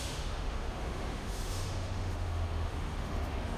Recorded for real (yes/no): no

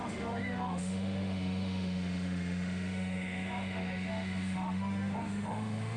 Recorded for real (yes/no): no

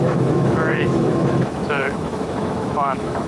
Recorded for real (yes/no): no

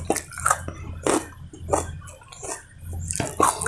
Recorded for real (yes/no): yes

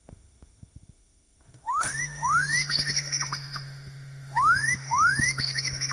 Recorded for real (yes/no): no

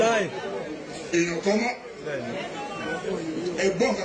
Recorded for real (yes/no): yes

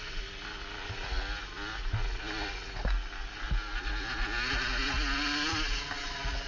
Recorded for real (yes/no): yes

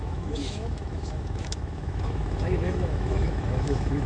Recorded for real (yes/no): no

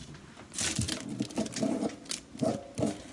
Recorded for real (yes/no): yes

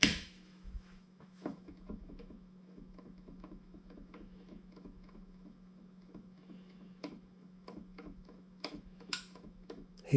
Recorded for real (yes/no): no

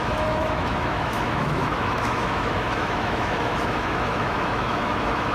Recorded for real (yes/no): no